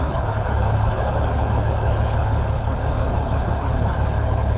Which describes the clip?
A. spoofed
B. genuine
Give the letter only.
A